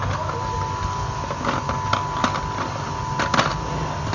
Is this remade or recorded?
recorded